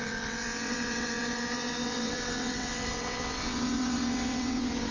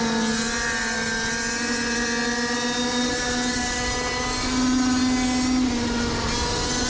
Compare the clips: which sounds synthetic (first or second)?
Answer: first